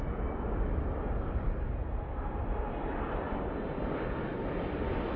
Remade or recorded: recorded